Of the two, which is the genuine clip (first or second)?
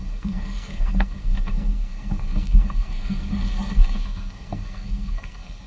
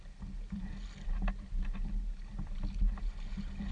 second